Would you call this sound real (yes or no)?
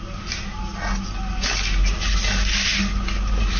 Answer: yes